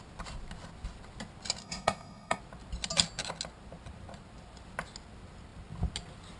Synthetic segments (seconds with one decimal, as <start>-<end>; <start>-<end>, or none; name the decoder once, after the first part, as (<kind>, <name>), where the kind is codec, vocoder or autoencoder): 1.6-2.4 (codec, DAC)